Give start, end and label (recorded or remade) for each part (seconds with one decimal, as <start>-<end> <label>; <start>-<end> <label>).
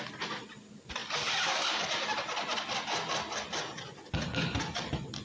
0.0-5.2 recorded